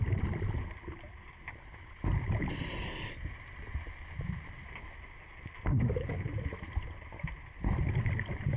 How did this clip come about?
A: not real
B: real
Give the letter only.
B